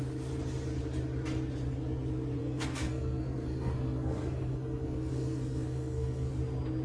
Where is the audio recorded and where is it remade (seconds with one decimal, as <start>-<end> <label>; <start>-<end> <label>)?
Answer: 0.0-2.4 recorded; 2.4-6.3 remade; 6.3-6.8 recorded